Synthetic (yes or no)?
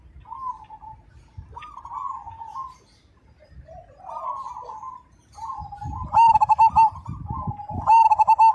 no